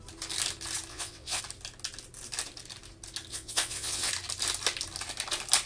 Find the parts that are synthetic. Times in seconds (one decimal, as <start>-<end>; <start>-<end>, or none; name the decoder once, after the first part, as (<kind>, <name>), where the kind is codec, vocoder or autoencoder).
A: 0.9-1.4 (vocoder, WaveNeXt); 3.3-4.1